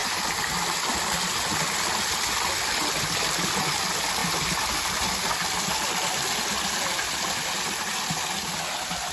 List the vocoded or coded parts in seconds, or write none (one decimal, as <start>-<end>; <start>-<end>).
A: none